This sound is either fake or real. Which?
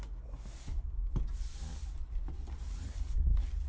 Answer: real